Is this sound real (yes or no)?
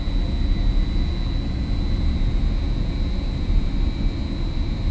yes